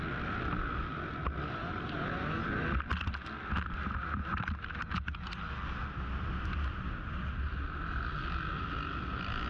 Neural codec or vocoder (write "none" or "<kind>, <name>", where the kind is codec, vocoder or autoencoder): none